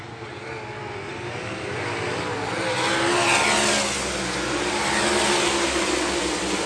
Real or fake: real